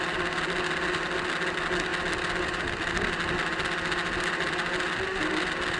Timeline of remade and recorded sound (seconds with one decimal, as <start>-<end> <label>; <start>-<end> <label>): 0.0-5.8 recorded